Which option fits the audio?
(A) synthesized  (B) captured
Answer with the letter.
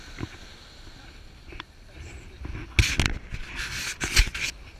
B